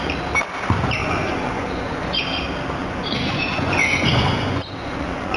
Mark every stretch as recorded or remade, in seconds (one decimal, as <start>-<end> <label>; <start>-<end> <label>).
0.0-1.0 recorded; 1.0-2.2 remade; 2.2-2.8 recorded; 2.8-5.4 remade